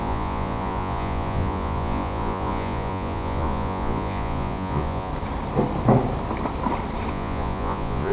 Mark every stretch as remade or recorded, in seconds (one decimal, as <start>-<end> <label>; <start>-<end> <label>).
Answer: 0.0-5.1 remade; 5.1-7.1 recorded; 7.1-8.1 remade

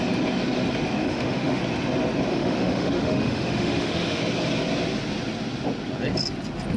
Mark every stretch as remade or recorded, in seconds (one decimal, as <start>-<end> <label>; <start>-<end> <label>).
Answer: 0.0-1.0 recorded; 1.0-1.6 remade; 1.6-2.3 recorded; 2.3-4.2 remade; 4.2-6.8 recorded

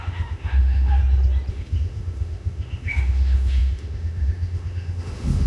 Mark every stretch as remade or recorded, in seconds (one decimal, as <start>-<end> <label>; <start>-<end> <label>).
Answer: 0.0-1.0 remade; 1.0-1.5 recorded; 1.5-5.5 remade

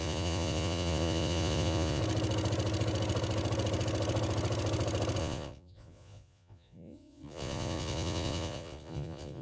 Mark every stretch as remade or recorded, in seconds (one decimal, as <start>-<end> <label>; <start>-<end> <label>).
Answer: 0.0-2.0 remade; 2.0-5.2 recorded; 5.2-9.4 remade

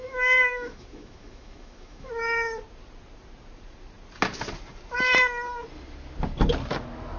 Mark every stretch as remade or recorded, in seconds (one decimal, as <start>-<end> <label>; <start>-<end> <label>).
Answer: 0.0-2.1 remade; 2.1-7.2 recorded

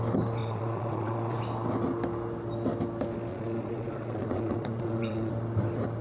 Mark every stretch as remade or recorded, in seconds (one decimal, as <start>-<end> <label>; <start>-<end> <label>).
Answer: 0.0-0.4 recorded; 0.4-1.4 remade; 1.4-3.3 recorded; 3.3-5.3 remade; 5.3-6.0 recorded